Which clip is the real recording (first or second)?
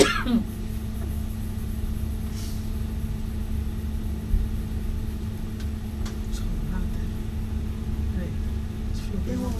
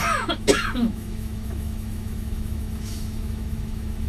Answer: first